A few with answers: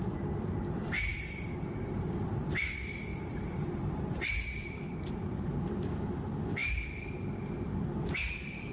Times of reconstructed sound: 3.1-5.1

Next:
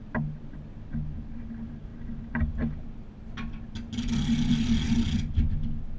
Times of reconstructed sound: none

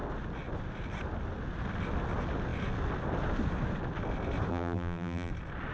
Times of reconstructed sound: 4.5-5.3

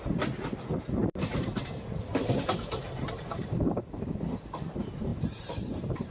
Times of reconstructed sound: 1.0-1.6; 2.1-3.8; 5.1-6.1

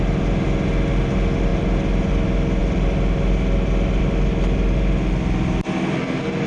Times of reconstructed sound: none

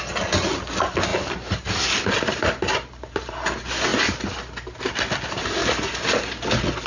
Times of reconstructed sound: 1.1-3.3; 5.6-6.2

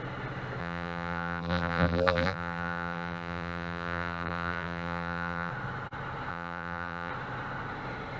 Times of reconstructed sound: 0.6-5.5; 6.3-7.1